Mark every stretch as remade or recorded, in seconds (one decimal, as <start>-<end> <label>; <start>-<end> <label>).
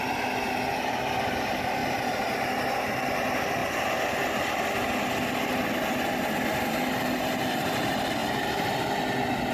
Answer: 0.0-1.8 recorded; 1.8-2.3 remade; 2.3-8.2 recorded; 8.2-8.8 remade; 8.8-9.5 recorded